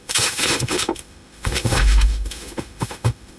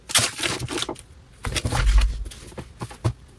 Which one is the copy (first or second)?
first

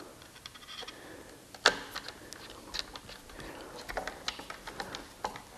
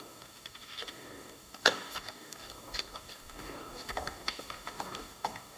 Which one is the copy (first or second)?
second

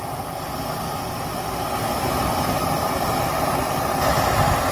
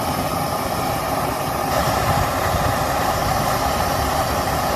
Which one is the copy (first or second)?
second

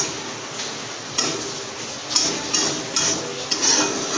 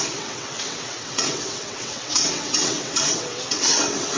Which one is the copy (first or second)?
second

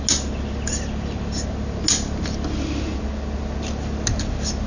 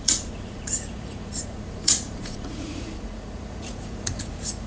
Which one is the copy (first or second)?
second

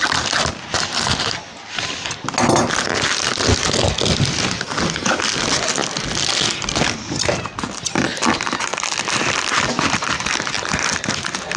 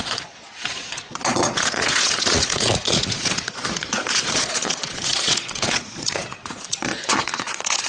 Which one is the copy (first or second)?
second